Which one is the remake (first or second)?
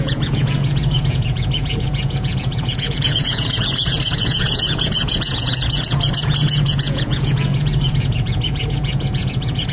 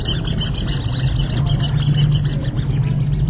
first